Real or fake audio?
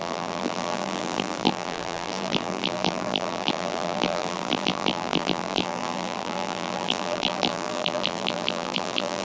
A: fake